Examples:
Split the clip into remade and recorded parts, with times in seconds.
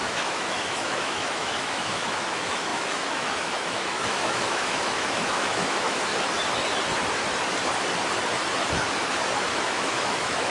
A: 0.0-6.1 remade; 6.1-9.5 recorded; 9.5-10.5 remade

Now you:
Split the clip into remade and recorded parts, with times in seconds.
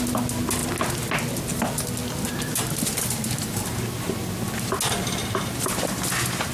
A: 0.0-5.2 recorded; 5.2-6.5 remade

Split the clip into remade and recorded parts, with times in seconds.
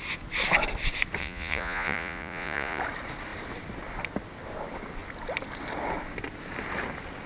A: 0.0-1.2 recorded; 1.2-2.8 remade; 2.8-7.3 recorded